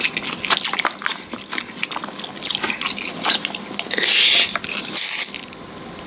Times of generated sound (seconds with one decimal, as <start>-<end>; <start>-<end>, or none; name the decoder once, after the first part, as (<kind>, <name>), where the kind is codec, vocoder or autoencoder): none